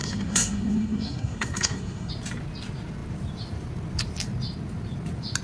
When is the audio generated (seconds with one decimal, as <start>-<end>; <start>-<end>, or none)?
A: 0.0-2.1